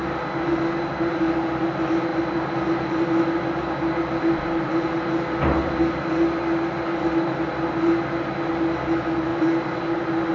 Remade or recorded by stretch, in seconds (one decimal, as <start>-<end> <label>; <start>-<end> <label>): 0.0-10.3 recorded